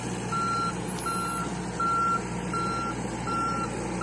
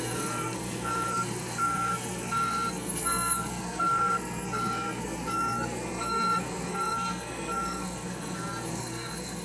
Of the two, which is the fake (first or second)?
second